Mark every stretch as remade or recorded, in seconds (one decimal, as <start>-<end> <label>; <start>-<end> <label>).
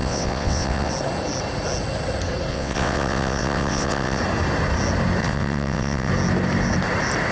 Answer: 0.0-0.9 remade; 0.9-2.5 recorded; 2.5-4.2 remade; 4.2-5.2 recorded; 5.2-6.1 remade; 6.1-7.3 recorded